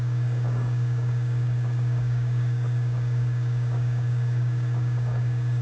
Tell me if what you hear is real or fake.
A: fake